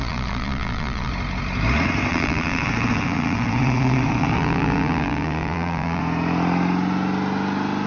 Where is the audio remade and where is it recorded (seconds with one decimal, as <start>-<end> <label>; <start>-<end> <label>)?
0.0-1.1 remade; 1.1-2.1 recorded; 2.1-6.0 remade; 6.0-7.9 recorded